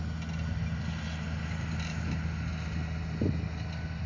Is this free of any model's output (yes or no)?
yes